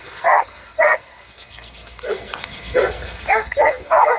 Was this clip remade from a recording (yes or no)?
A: yes